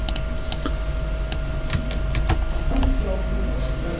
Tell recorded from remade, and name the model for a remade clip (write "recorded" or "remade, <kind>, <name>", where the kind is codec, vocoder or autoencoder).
recorded